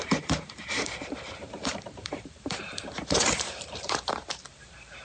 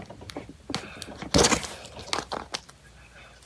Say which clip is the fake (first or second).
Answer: first